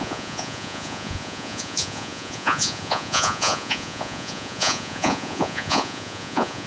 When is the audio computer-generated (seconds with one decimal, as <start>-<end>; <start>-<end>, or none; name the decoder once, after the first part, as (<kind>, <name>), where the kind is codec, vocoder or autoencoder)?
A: 0.0-6.7 (vocoder, Vocos)